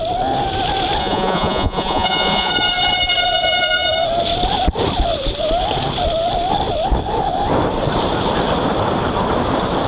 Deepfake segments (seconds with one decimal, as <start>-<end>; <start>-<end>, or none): 1.0-2.5